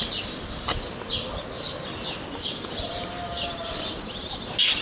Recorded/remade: recorded